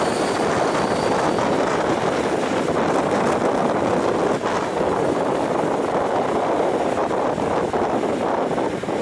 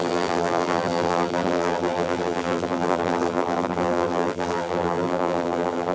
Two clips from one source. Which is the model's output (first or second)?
second